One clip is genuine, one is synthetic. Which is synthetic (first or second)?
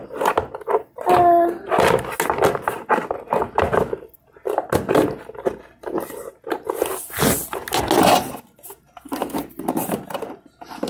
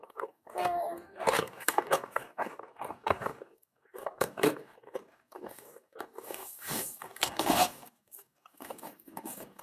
second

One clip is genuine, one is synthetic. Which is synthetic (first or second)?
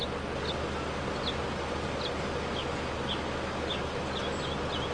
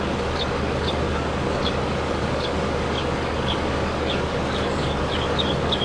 second